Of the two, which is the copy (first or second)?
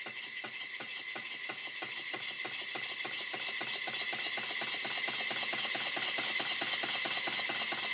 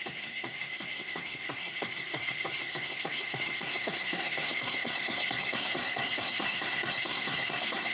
second